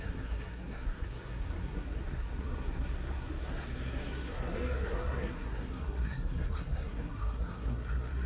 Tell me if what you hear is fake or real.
fake